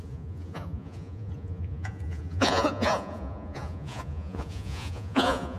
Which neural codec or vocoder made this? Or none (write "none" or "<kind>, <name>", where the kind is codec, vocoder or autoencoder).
vocoder, Vocos